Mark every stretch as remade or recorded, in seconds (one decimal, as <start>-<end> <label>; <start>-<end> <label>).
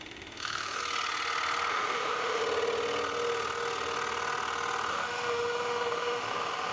0.0-0.8 remade; 0.8-1.7 recorded; 1.7-2.4 remade; 2.4-4.9 recorded; 4.9-6.7 remade